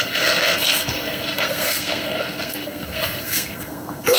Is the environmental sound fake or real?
fake